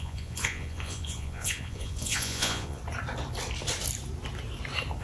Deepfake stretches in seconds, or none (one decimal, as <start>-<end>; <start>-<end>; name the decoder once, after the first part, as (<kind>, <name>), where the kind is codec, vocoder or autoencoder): 0.0-2.8 (vocoder, Vocos)